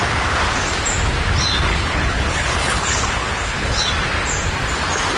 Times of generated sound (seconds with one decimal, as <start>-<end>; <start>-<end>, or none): 1.7-3.9